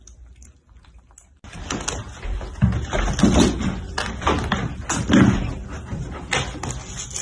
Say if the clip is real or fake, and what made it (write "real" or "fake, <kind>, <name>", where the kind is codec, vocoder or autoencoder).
real